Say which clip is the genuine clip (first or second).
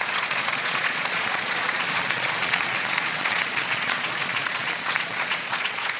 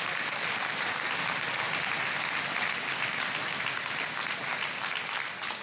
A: second